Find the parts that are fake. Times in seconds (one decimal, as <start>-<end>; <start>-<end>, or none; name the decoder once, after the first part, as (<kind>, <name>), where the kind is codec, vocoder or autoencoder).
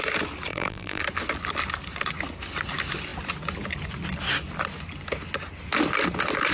0.5-1.0 (vocoder, BigVGAN v2)